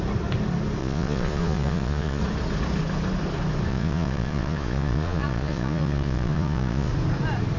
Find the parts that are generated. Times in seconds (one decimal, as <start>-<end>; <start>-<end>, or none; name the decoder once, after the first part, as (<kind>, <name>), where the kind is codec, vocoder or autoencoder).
0.8-2.2 (vocoder, Vocos); 3.7-6.9